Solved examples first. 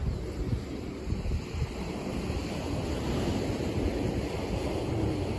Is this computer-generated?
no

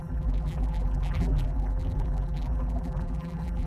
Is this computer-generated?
yes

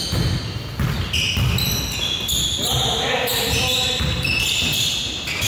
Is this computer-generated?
no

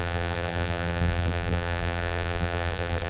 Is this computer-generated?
yes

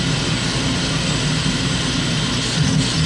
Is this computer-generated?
no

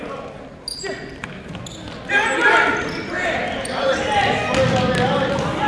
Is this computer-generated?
no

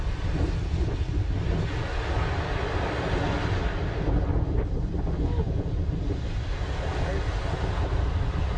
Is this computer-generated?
no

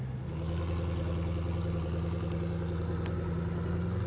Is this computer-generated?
no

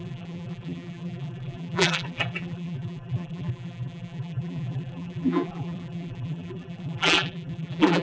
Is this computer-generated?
yes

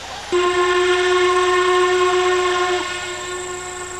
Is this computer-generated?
no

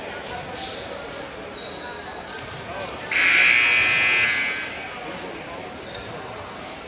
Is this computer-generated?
no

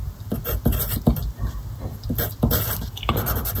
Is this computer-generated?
yes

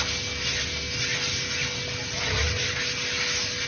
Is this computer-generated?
no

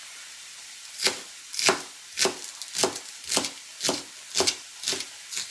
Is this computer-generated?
no